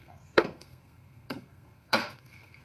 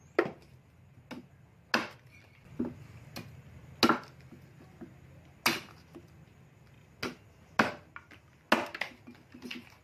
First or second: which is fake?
first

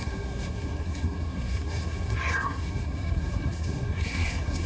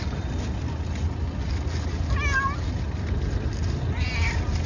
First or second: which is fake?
first